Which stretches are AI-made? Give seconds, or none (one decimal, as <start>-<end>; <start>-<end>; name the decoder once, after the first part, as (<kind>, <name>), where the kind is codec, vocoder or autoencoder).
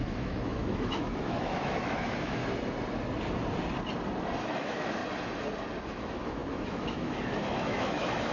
0.0-2.4 (autoencoder, DAC-VAE); 4.4-5.0; 5.8-8.3